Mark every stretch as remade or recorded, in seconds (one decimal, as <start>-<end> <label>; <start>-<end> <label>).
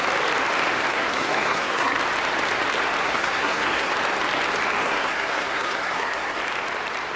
0.0-0.9 recorded; 0.9-2.0 remade; 2.0-3.0 recorded; 3.0-3.9 remade; 3.9-4.8 recorded; 4.8-6.4 remade; 6.4-7.2 recorded